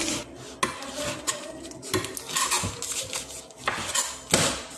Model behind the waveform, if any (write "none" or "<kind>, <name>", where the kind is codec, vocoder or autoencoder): none